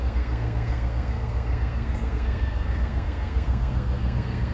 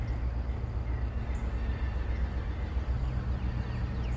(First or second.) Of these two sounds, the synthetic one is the first